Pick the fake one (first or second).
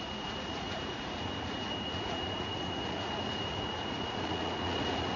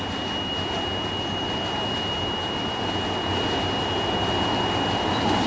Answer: first